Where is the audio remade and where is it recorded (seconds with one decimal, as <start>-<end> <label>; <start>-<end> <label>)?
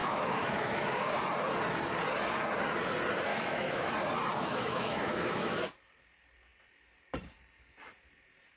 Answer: 0.0-1.2 remade; 1.2-3.3 recorded; 3.3-3.9 remade; 3.9-4.3 recorded; 4.3-5.6 remade; 5.6-8.6 recorded